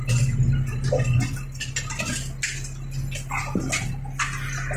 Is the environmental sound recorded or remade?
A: recorded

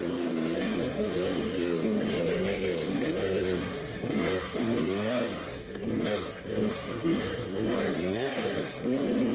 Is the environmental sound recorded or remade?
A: remade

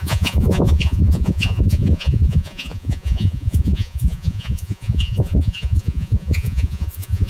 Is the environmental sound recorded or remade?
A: remade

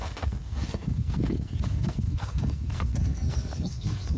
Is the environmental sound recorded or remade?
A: remade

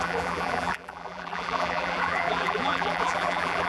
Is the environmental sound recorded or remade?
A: remade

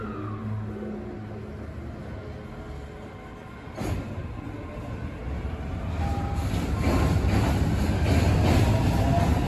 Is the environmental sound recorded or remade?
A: recorded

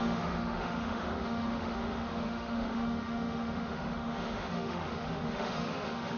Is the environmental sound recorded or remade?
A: remade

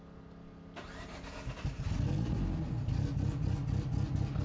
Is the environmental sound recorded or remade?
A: recorded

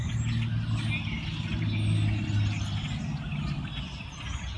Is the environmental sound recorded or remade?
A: recorded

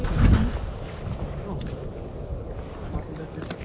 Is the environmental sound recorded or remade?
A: recorded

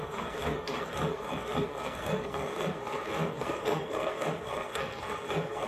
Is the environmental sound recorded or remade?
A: remade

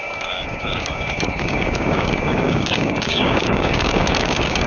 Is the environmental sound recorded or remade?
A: remade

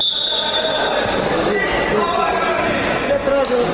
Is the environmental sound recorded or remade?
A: recorded